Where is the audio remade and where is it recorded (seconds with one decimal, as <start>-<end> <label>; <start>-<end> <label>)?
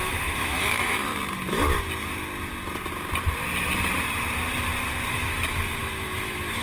0.0-1.1 remade; 1.1-5.1 recorded; 5.1-6.6 remade